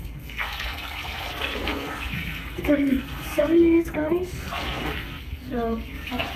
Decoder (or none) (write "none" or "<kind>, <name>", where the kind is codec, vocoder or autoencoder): codec, SNAC